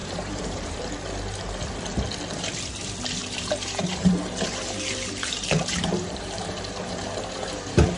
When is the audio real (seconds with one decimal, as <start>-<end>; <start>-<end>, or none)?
0.8-3.2

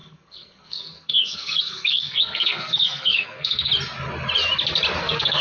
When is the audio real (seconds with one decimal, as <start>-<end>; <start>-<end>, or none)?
3.7-5.0